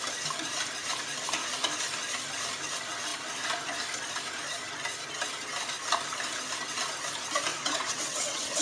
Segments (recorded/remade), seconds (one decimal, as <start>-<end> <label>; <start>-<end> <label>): 0.0-7.5 recorded; 7.5-8.6 remade